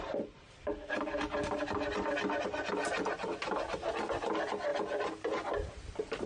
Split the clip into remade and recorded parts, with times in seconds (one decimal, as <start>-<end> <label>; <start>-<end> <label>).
0.0-6.3 recorded